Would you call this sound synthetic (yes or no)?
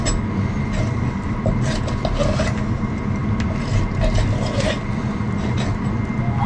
no